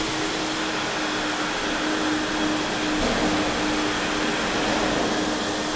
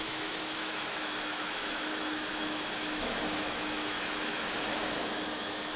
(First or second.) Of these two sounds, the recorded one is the first